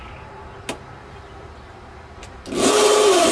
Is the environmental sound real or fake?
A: real